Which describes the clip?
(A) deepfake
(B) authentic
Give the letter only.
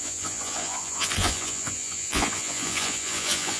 A